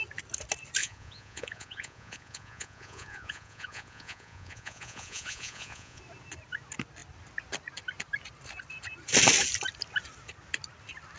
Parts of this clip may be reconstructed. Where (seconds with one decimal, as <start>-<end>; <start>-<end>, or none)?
0.8-6.0